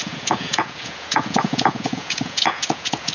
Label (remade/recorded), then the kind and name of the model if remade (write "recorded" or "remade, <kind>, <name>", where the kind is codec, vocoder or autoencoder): remade, vocoder, Vocos